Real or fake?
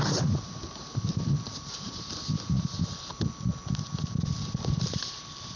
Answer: real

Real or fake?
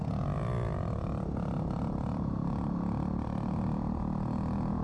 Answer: real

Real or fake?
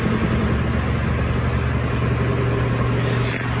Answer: real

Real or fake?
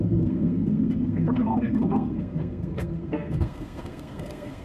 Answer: fake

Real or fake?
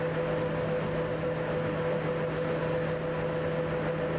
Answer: real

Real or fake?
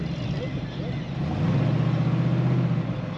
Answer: real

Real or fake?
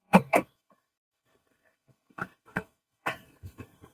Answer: fake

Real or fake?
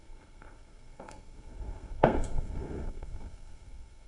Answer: fake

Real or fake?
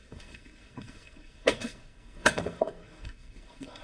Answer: fake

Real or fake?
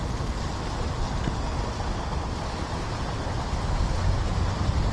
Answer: real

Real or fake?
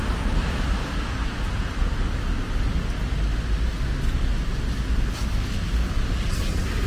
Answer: real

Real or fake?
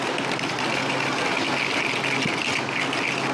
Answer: real